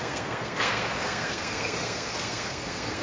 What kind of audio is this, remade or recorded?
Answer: remade